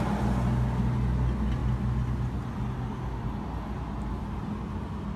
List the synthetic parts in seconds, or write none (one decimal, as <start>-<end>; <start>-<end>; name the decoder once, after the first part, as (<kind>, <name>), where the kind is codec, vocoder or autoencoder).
none